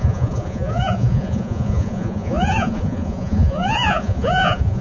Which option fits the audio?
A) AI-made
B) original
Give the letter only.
A